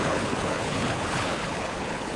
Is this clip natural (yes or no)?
no